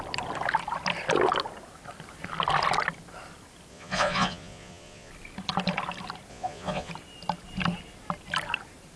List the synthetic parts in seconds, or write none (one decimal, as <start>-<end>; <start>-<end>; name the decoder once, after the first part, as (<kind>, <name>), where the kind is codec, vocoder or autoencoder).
3.7-5.1 (vocoder, Vocos); 6.3-6.9